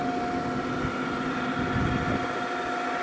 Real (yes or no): yes